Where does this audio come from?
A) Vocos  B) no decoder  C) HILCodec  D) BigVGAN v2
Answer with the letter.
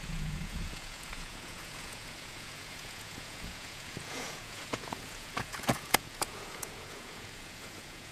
A